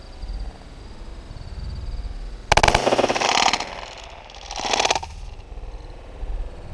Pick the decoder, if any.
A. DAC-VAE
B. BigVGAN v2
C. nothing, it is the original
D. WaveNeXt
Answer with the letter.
C